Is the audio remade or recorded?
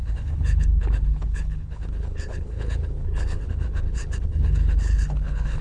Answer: remade